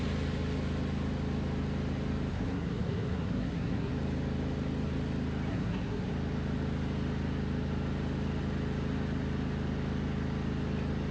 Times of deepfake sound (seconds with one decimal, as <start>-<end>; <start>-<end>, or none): 2.3-3.9; 5.5-6.1